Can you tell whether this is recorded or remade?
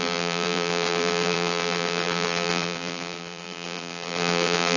remade